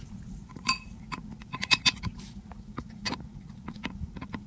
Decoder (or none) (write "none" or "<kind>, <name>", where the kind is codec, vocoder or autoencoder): vocoder, Vocos